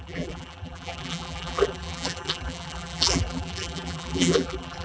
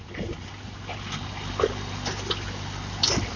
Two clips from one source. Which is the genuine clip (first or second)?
second